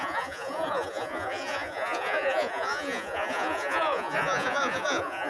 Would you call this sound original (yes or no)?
no